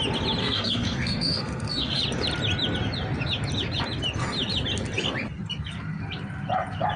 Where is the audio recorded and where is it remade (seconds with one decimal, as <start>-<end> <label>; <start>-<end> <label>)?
0.0-0.4 recorded; 0.4-2.0 remade; 2.0-7.0 recorded